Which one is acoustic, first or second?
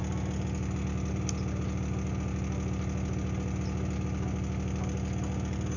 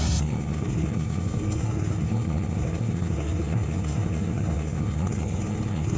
first